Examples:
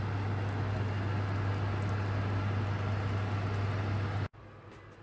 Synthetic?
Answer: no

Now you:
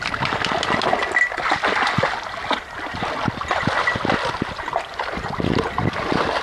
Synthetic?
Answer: no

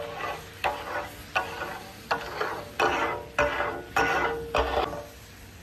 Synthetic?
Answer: no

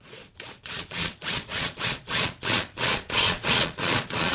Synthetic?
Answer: yes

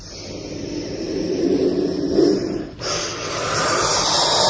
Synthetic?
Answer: no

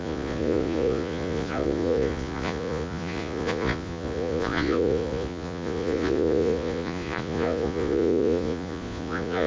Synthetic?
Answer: yes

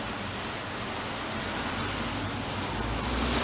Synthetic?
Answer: no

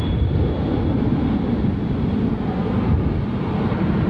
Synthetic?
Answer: no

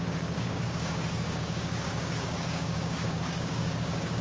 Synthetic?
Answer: yes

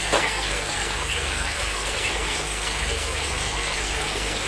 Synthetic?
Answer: yes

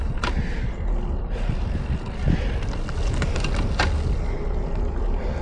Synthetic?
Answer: no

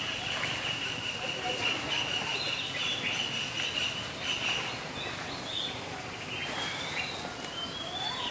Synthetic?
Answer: no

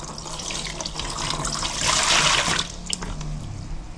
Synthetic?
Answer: no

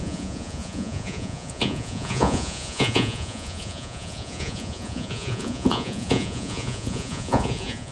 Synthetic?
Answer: yes